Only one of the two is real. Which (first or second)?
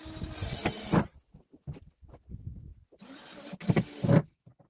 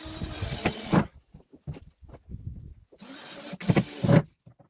first